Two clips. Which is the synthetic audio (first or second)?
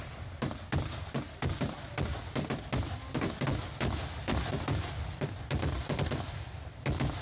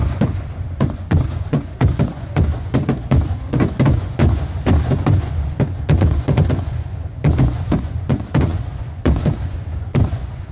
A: second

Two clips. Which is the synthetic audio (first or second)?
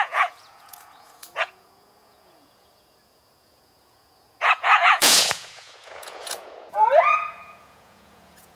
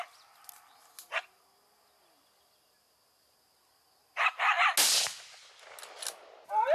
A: first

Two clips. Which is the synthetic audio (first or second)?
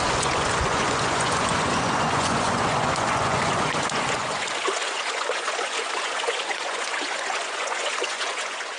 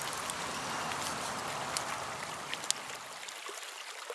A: first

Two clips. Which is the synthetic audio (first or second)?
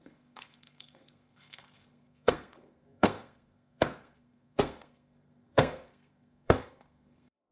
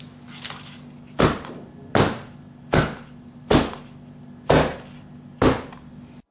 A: first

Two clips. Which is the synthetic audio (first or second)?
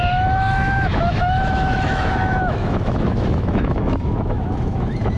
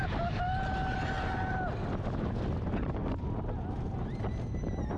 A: first